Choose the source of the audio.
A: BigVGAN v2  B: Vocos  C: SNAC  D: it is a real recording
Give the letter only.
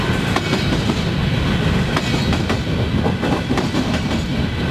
D